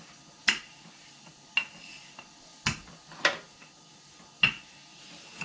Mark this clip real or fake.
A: real